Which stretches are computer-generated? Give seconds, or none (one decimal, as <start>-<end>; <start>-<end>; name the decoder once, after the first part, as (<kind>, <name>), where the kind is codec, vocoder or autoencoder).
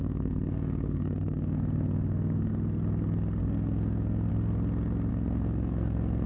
0.0-2.5 (codec, SNAC); 3.4-4.3; 5.1-6.3